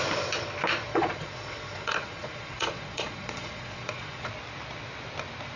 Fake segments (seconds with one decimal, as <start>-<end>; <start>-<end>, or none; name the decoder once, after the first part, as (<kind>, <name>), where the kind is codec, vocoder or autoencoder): 0.9-4.3 (vocoder, Vocos)